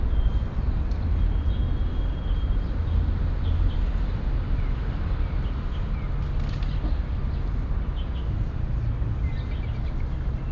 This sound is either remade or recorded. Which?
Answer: recorded